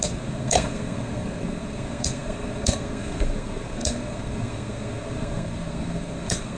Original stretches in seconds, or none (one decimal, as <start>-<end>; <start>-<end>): none